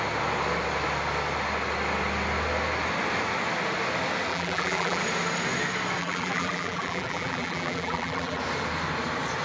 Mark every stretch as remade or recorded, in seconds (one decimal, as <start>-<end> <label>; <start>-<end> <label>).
0.0-4.3 recorded; 4.3-5.0 remade; 5.0-6.0 recorded; 6.0-8.4 remade; 8.4-9.4 recorded